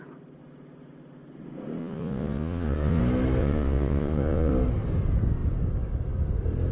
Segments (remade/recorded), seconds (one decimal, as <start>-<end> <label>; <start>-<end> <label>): 0.0-1.8 recorded; 1.8-3.0 remade; 3.0-3.4 recorded; 3.4-4.5 remade; 4.5-6.7 recorded